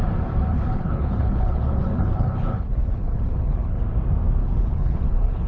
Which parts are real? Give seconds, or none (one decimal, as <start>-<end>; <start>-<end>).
0.0-0.5; 3.8-4.4